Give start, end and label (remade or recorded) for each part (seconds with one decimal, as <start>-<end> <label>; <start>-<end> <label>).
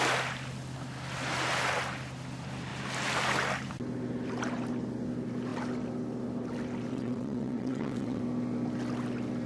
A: 0.0-6.9 recorded; 6.9-8.2 remade; 8.2-9.5 recorded